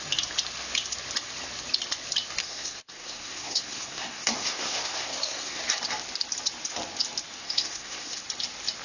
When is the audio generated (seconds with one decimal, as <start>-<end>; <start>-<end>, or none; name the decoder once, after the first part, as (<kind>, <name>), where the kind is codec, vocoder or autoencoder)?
2.4-5.6 (codec, SNAC); 7.4-8.2